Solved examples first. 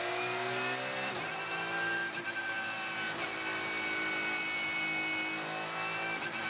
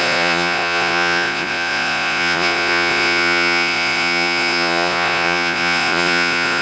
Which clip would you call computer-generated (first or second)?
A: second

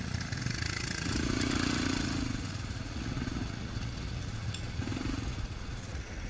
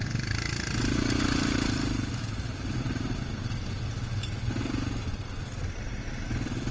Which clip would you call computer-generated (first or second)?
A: first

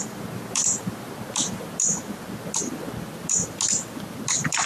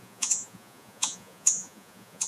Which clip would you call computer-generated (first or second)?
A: second